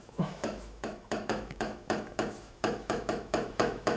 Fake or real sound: fake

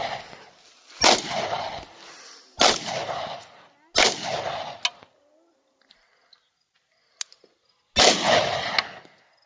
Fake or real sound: real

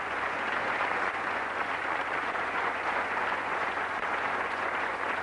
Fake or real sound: fake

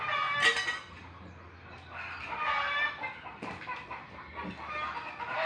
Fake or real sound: real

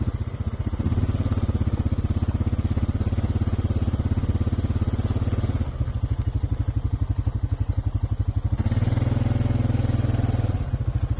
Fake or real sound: real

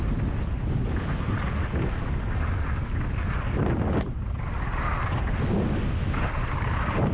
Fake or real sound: real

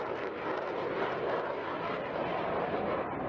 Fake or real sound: real